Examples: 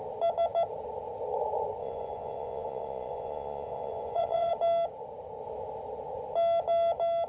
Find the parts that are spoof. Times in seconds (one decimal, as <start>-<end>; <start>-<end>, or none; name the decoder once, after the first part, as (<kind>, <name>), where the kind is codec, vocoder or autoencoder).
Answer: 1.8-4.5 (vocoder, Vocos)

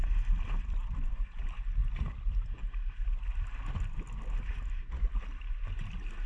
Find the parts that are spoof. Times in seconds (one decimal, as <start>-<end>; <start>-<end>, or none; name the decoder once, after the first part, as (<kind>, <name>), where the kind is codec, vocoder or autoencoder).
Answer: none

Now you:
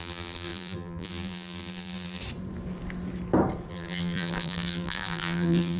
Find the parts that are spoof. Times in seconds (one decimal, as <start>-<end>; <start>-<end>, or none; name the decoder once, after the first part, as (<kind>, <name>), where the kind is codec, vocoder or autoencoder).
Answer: 0.0-2.2 (vocoder, BigVGAN v2); 3.7-5.8